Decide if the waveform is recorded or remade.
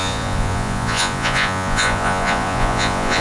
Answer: remade